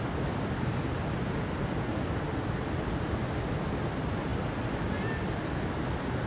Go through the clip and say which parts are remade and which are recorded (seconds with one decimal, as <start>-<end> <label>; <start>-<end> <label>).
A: 0.0-6.3 recorded